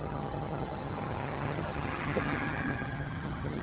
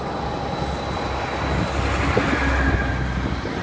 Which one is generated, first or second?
first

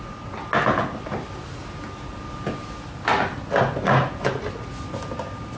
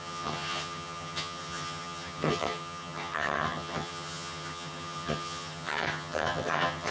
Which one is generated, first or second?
second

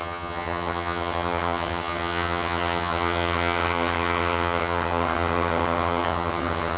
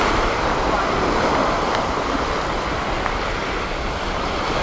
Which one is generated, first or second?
first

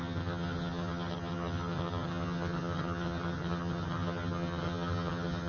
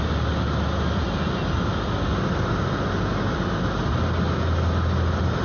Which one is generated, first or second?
first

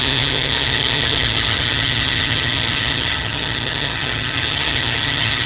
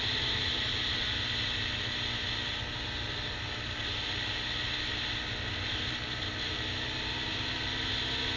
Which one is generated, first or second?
first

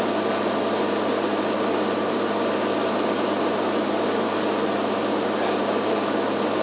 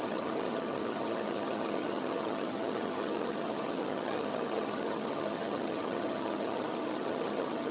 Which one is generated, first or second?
second